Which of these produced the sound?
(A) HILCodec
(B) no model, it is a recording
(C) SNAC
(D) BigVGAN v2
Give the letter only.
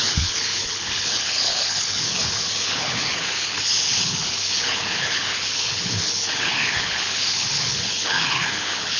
A